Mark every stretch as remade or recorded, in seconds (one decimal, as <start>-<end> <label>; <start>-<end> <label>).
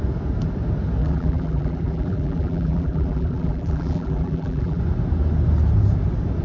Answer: 0.0-1.0 recorded; 1.0-4.8 remade; 4.8-6.4 recorded